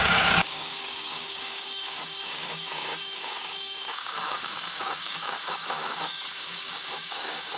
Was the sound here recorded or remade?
remade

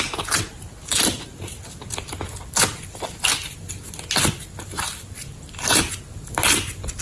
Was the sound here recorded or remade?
recorded